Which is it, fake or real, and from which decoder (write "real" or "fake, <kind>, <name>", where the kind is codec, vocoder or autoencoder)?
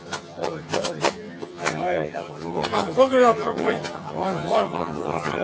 fake, vocoder, HiFi-GAN